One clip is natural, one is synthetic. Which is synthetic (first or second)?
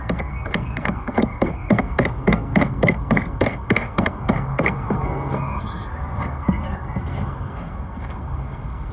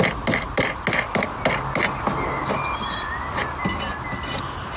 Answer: first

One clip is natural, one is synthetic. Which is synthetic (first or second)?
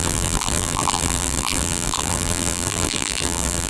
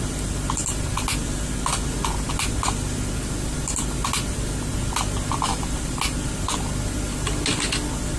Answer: first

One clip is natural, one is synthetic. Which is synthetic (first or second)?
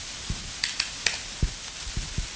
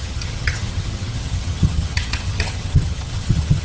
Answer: second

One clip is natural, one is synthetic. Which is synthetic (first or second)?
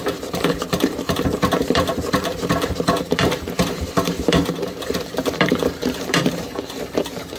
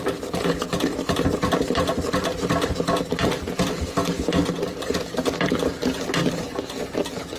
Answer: first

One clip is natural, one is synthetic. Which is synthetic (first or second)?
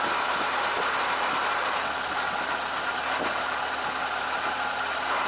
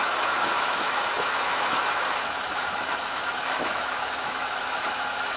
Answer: second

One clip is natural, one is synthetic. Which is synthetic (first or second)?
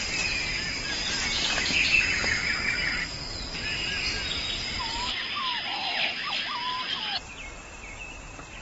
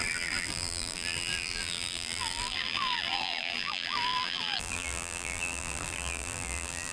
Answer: second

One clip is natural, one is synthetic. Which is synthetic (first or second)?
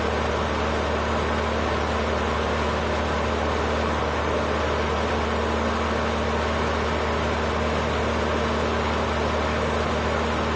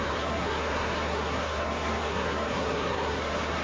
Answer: second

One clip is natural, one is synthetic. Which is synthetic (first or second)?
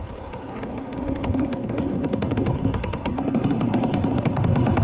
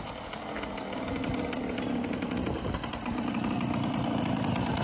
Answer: first